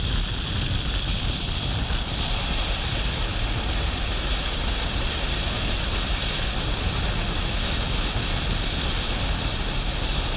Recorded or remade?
recorded